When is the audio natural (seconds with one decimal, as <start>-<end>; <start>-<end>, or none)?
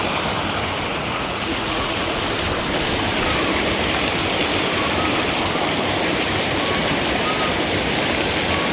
0.0-0.9; 2.2-8.7